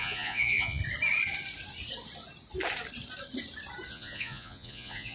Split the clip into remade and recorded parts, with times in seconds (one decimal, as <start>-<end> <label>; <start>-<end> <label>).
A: 0.0-0.8 remade; 0.8-3.9 recorded; 3.9-5.1 remade

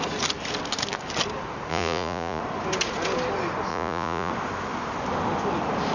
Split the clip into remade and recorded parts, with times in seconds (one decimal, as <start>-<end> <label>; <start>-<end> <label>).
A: 0.0-1.7 recorded; 1.7-2.4 remade; 2.4-3.7 recorded; 3.7-4.3 remade; 4.3-5.9 recorded